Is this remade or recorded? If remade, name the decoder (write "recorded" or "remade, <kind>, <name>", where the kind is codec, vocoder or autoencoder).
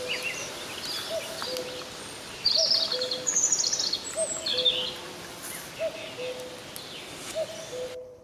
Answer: recorded